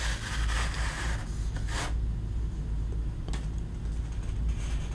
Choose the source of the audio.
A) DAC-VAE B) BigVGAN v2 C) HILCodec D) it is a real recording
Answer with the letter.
D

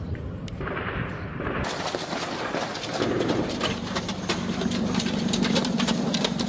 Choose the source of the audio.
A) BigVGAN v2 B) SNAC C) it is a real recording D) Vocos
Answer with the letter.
A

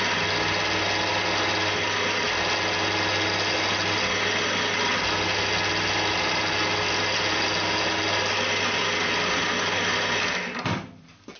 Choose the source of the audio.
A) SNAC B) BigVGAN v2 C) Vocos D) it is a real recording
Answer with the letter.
D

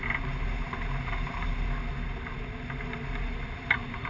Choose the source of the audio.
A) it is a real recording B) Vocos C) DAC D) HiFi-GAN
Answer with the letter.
A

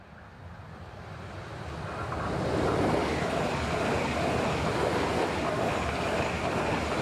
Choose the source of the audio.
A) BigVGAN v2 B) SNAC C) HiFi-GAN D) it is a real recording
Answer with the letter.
D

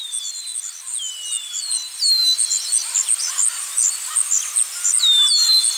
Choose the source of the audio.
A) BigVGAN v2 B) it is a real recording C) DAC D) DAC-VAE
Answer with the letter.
B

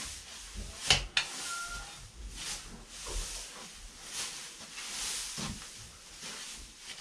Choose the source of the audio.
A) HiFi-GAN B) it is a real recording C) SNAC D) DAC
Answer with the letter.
B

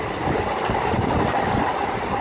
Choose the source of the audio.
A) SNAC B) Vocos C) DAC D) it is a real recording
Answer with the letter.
D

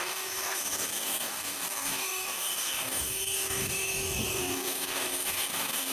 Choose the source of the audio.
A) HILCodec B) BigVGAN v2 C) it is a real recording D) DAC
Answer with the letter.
D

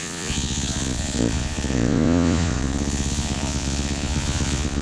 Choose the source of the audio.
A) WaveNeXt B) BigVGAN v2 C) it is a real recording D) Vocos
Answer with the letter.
D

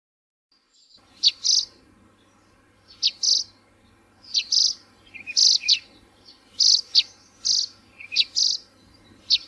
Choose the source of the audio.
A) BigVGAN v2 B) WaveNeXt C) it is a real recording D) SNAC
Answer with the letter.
C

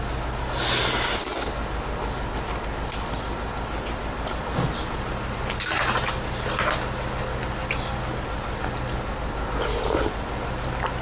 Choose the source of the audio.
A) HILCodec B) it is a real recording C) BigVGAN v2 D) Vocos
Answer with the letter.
B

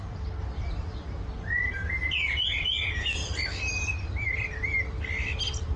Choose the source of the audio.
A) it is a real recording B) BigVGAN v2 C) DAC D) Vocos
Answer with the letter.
B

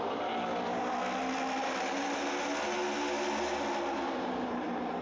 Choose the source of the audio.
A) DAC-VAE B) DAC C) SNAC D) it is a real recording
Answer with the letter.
D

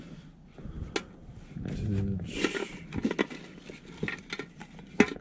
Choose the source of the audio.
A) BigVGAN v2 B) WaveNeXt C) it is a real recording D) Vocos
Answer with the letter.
C